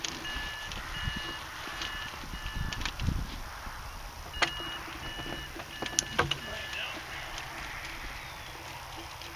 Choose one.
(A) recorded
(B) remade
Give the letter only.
A